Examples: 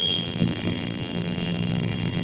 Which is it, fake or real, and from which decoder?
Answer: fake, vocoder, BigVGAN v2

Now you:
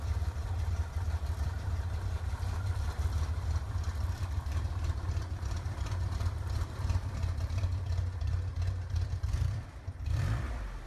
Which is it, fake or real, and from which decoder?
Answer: fake, vocoder, BigVGAN v2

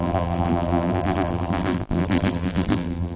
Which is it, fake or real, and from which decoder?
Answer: fake, vocoder, BigVGAN v2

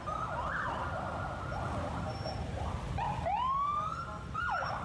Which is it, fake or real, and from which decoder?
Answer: real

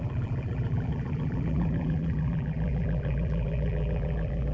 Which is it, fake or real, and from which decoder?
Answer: fake, vocoder, BigVGAN v2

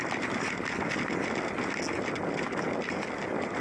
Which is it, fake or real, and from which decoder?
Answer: real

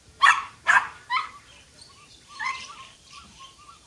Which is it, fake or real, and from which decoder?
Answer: fake, vocoder, BigVGAN v2